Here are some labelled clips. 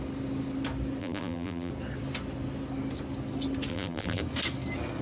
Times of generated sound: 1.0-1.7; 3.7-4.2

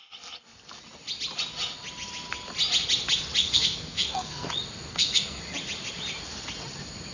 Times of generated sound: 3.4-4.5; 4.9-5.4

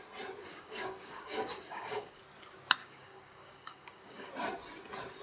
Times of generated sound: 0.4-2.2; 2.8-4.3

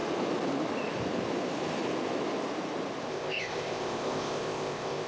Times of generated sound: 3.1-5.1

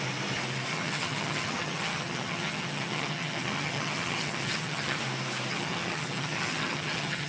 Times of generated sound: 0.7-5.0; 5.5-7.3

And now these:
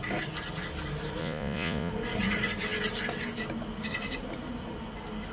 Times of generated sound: 1.2-1.9